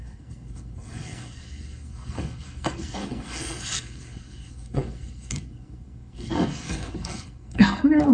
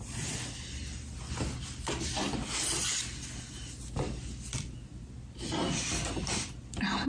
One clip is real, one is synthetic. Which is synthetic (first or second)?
first